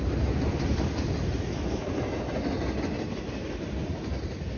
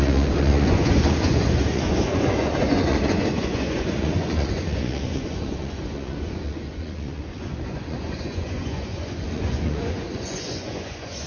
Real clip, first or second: first